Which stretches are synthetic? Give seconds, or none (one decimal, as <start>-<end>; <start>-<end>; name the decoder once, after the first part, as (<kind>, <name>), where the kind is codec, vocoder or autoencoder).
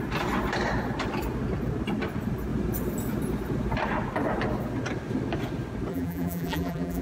5.9-7.0 (vocoder, BigVGAN v2)